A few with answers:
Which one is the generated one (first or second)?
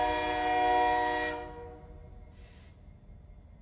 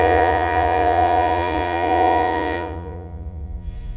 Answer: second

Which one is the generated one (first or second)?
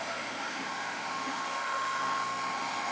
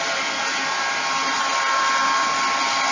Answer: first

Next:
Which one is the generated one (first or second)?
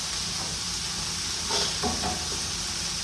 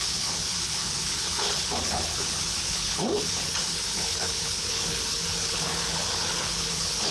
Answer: second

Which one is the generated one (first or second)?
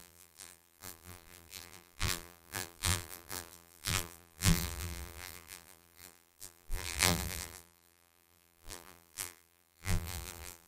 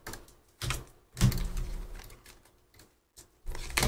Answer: first